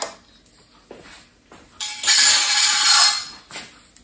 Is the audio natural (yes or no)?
yes